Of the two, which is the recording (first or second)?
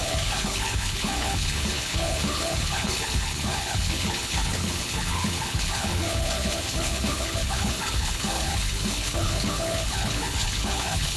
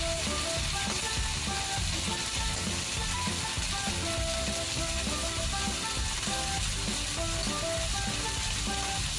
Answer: second